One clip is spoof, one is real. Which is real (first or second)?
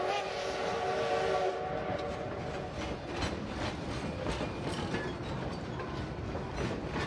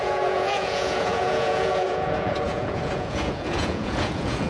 first